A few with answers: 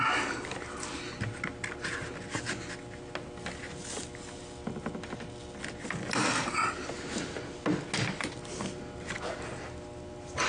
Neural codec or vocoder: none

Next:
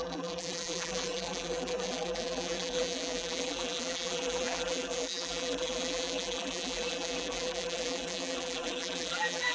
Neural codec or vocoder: vocoder, BigVGAN v2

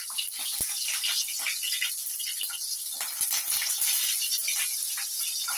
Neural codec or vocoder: none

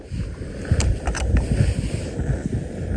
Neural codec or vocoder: none